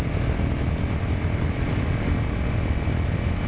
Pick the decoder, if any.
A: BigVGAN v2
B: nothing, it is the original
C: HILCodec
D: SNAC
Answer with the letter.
B